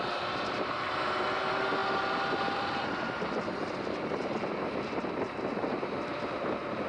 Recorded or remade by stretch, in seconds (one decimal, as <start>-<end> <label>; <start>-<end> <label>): 0.0-6.9 recorded